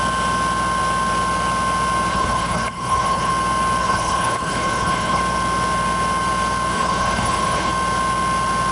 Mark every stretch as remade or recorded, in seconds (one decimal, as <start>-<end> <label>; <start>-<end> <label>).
0.0-2.1 recorded; 2.1-3.3 remade; 3.3-3.8 recorded; 3.8-5.2 remade; 5.2-6.7 recorded; 6.7-7.7 remade; 7.7-8.7 recorded